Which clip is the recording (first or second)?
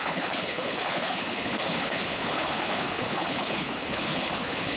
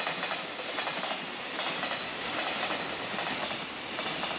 second